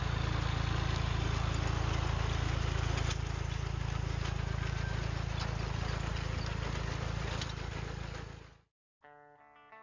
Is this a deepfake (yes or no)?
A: no